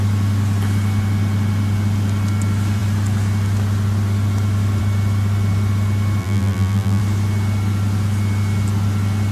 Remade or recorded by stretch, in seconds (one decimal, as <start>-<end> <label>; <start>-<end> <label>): 0.0-6.2 recorded; 6.2-7.0 remade; 7.0-9.3 recorded